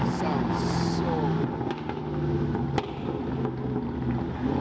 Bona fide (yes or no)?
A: yes